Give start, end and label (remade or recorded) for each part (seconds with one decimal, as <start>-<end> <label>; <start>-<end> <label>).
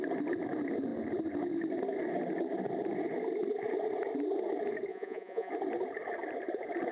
0.0-4.9 recorded; 4.9-5.5 remade; 5.5-6.9 recorded